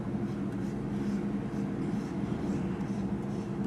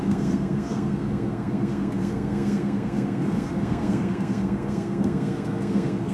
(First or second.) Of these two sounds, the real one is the first